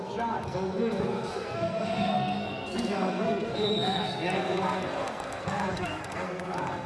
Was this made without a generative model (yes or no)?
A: no